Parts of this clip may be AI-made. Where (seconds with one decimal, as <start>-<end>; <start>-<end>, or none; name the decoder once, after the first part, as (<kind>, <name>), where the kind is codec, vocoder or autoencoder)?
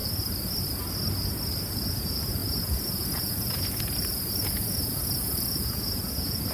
1.7-6.5 (vocoder, Vocos)